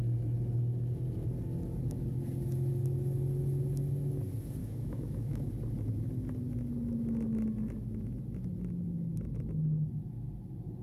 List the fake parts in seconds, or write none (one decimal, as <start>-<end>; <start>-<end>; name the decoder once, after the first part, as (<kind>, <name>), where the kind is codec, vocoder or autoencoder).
4.6-5.5 (autoencoder, DAC-VAE)